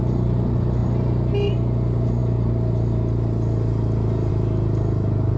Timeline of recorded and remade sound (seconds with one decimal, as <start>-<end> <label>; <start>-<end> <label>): 0.0-5.4 recorded